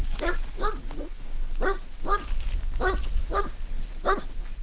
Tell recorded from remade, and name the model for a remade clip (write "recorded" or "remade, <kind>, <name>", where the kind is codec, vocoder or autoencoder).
recorded